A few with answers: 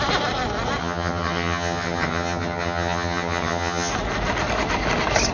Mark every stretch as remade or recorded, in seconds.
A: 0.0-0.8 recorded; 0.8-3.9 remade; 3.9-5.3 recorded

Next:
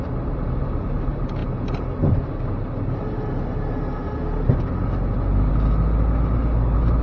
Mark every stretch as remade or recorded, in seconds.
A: 0.0-7.0 recorded

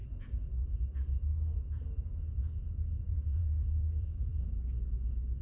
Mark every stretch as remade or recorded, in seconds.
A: 0.0-2.9 recorded; 2.9-5.4 remade

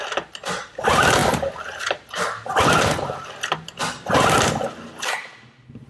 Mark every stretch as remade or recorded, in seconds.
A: 0.0-5.9 recorded

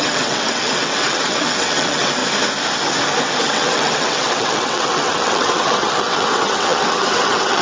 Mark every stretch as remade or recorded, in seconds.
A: 0.0-2.2 remade; 2.2-3.4 recorded; 3.4-7.6 remade

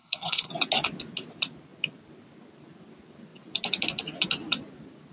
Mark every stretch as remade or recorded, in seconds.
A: 0.0-0.5 remade; 0.5-5.1 recorded